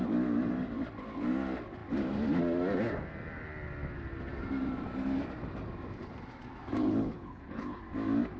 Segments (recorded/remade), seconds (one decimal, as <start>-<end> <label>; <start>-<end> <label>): 0.0-6.8 recorded; 6.8-7.8 remade; 7.8-8.4 recorded